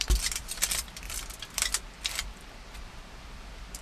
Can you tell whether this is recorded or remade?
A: remade